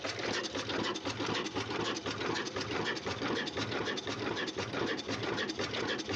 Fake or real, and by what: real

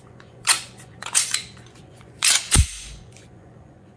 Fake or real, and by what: fake, vocoder, Vocos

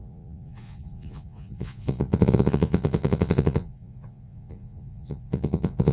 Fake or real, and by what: fake, vocoder, Vocos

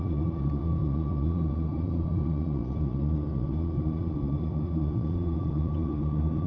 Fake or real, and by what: fake, vocoder, Vocos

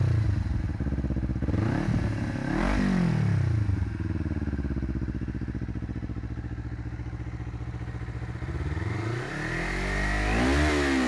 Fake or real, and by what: real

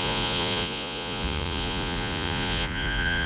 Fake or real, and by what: fake, vocoder, Vocos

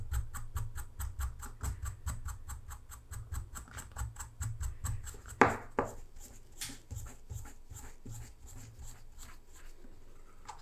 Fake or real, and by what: real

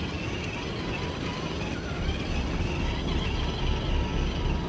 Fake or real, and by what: real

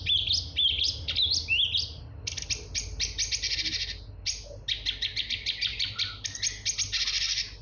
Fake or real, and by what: real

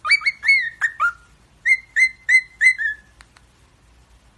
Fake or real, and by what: real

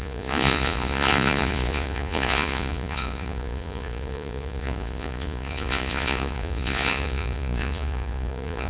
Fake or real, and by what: fake, vocoder, Vocos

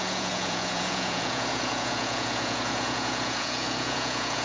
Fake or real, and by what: fake, vocoder, Vocos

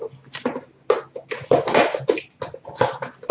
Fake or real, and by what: real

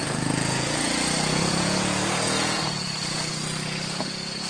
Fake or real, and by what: fake, vocoder, Vocos